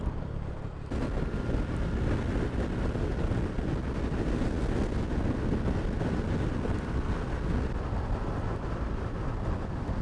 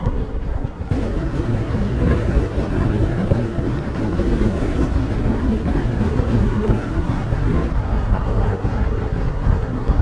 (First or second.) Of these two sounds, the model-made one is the second